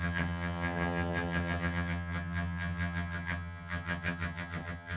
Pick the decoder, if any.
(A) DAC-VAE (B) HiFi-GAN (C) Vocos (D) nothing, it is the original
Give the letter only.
B